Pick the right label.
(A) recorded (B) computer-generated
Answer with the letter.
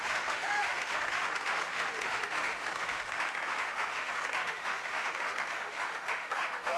B